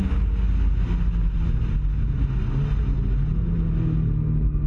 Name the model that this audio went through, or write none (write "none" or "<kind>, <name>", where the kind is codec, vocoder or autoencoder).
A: none